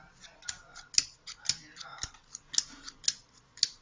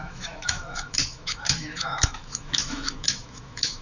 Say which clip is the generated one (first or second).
second